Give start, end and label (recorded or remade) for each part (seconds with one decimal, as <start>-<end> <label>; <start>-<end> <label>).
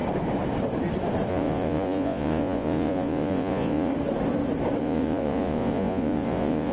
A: 0.0-1.3 recorded; 1.3-3.9 remade; 3.9-4.8 recorded; 4.8-6.7 remade